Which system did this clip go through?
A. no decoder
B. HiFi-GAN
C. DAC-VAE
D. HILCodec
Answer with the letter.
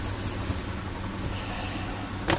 A